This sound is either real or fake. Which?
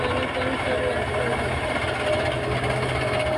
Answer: real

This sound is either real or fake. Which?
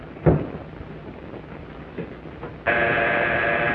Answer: real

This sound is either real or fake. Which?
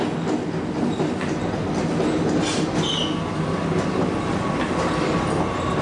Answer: real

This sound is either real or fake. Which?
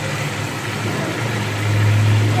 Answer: fake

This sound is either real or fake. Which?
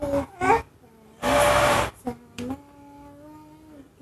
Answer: real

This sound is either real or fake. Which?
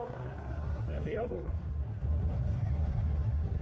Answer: fake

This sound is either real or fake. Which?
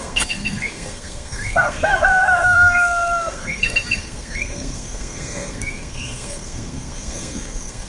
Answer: fake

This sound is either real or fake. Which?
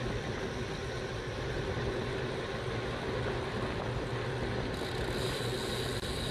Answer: real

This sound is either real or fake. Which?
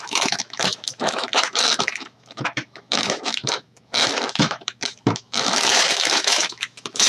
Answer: fake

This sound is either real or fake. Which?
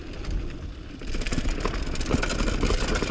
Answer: real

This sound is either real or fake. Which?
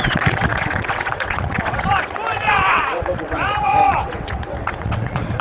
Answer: fake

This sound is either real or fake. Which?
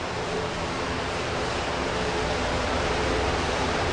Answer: fake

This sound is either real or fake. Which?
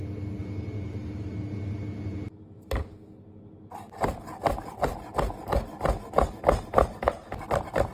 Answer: real